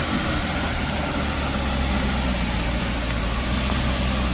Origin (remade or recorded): recorded